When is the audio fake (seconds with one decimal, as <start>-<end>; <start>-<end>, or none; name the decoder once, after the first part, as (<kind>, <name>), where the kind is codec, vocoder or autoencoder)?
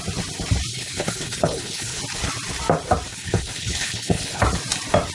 0.7-2.0 (codec, HILCodec); 3.1-4.4